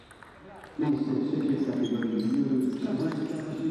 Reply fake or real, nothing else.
real